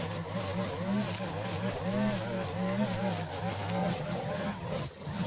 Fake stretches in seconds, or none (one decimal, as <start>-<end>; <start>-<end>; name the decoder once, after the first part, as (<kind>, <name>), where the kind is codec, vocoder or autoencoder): 3.8-5.3 (vocoder, HiFi-GAN)